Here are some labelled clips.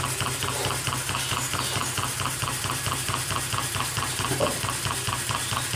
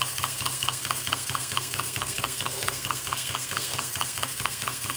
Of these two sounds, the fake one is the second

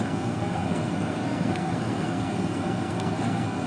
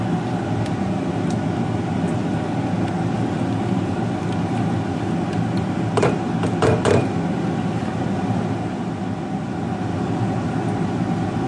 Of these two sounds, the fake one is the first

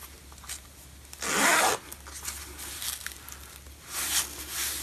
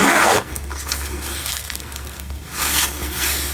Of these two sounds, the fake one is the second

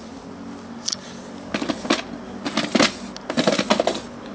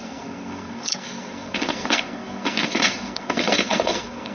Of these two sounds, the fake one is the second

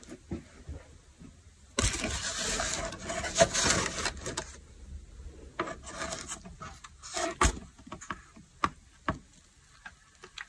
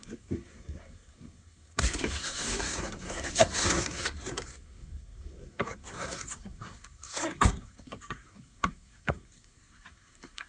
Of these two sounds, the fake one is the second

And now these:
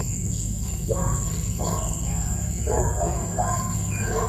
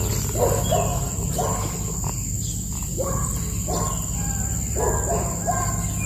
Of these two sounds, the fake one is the first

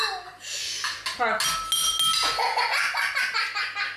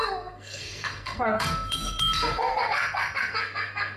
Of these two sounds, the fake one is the second